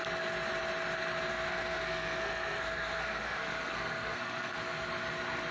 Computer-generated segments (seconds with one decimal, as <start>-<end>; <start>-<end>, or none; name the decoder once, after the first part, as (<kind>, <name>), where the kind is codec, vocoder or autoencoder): 1.3-4.6 (codec, SNAC)